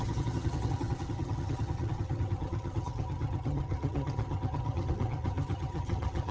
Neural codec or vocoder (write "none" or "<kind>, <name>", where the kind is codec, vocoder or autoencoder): vocoder, HiFi-GAN